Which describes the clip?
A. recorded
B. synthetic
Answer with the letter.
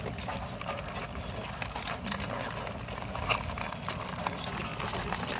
A